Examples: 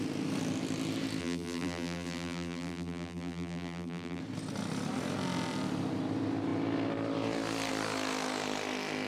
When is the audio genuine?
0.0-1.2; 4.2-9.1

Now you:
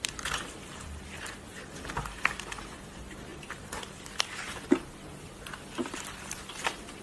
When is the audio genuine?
0.0-7.0

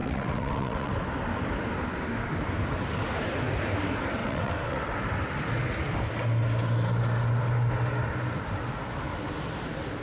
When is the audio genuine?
0.9-4.2; 4.9-10.0

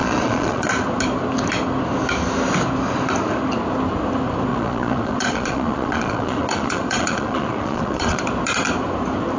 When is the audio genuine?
0.7-4.5; 8.2-9.4

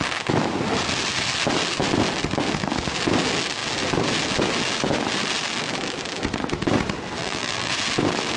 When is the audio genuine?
0.0-7.2; 7.7-8.4

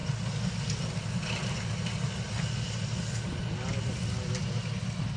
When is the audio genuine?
0.0-5.2

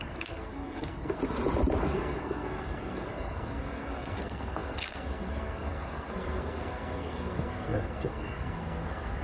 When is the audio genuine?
1.2-1.8